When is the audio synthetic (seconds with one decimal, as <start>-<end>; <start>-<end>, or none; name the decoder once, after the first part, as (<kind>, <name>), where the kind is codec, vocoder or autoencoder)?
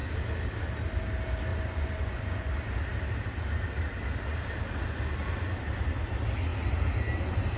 1.5-2.5 (vocoder, Vocos)